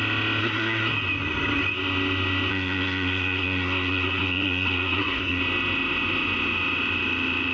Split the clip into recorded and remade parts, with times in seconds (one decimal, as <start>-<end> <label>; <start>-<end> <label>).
0.0-0.4 recorded; 0.4-0.9 remade; 0.9-2.5 recorded; 2.5-5.4 remade; 5.4-7.5 recorded